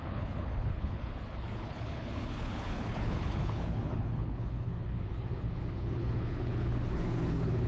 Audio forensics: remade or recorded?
remade